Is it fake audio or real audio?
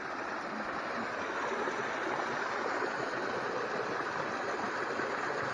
real